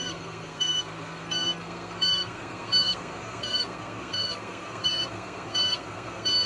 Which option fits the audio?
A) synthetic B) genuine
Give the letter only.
A